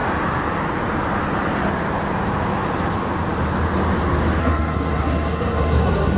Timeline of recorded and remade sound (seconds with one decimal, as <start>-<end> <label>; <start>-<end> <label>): 0.0-4.4 recorded; 4.4-6.2 remade